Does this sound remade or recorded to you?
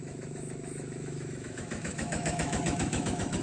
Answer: remade